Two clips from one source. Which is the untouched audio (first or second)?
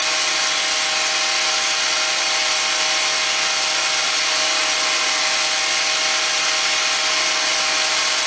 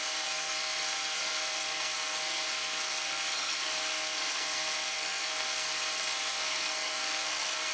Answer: first